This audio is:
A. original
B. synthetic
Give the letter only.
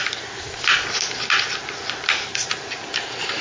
A